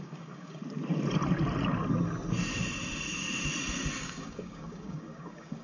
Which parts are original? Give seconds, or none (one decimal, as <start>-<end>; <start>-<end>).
0.6-4.0